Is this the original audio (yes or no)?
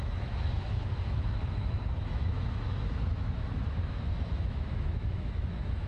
no